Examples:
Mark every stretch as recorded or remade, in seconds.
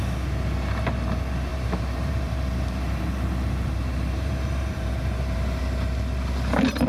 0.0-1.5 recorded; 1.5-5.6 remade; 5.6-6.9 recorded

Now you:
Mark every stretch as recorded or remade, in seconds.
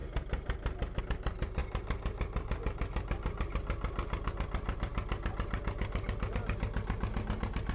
0.0-7.7 recorded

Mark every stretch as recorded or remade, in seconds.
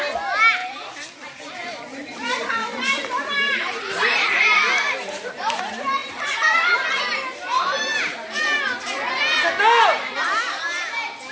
0.0-0.6 recorded; 0.6-5.6 remade; 5.6-6.0 recorded; 6.0-8.0 remade; 8.0-11.3 recorded